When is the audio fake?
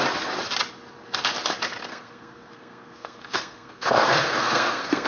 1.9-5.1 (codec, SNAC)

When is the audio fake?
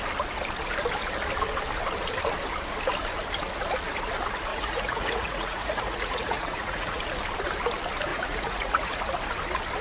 4.5-7.0 (vocoder, Vocos); 8.1-9.0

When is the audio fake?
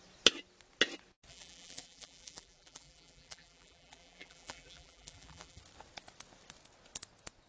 1.3-5.6 (vocoder, BigVGAN v2)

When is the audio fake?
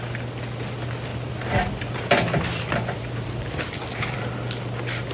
1.1-4.2 (vocoder, BigVGAN v2)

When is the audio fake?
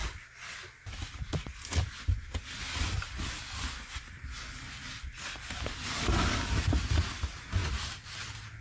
none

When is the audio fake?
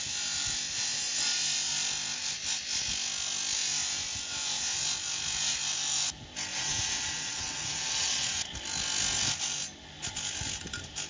6.5-8.4 (vocoder, WaveNeXt)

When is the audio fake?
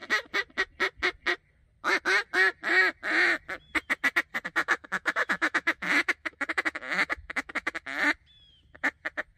4.6-8.0 (autoencoder, DAC-VAE)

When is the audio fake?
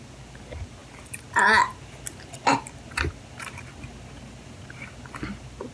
none